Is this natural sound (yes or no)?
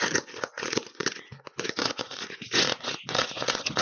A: no